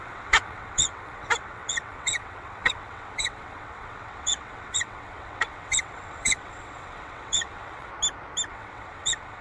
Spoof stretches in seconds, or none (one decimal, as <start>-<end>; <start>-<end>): 0.0-7.9; 8.5-9.4